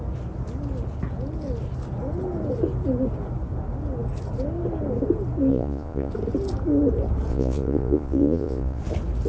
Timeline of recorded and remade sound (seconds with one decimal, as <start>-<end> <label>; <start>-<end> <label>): 0.0-5.5 recorded; 5.5-6.1 remade; 6.1-7.3 recorded; 7.3-8.8 remade; 8.8-9.3 recorded